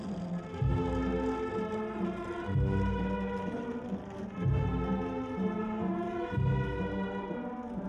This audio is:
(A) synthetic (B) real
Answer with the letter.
B